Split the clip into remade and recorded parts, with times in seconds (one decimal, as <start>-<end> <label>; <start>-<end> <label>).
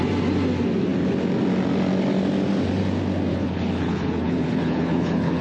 0.0-3.3 recorded; 3.3-5.4 remade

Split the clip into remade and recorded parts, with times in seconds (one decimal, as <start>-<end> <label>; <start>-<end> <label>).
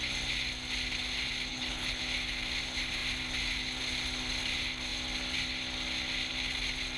0.0-1.5 recorded; 1.5-2.0 remade; 2.0-7.0 recorded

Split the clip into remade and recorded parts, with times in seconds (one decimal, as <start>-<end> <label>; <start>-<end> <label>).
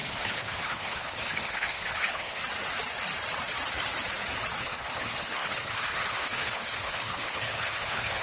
0.0-2.4 remade; 2.4-4.6 recorded; 4.6-8.2 remade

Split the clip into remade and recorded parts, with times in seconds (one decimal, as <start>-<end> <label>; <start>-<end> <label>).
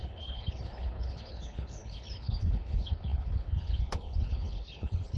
0.0-5.2 remade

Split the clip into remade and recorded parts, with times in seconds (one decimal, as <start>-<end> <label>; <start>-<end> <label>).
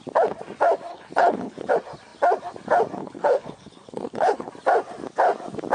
0.0-0.9 recorded; 0.9-1.7 remade; 1.7-3.0 recorded; 3.0-4.5 remade; 4.5-5.7 recorded